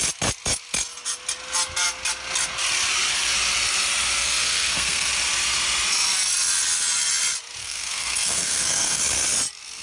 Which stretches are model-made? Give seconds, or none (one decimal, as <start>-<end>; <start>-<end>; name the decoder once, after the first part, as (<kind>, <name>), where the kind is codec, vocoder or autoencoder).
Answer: 4.2-5.1 (codec, SNAC); 7.6-9.0